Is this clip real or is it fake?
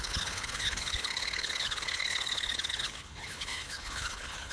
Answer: fake